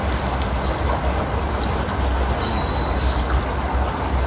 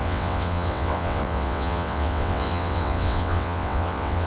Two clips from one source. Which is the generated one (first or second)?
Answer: second